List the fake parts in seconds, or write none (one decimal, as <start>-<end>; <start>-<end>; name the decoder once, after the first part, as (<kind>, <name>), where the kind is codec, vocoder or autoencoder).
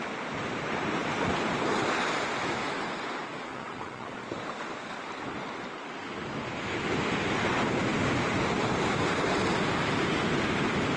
3.3-4.2 (vocoder, Vocos)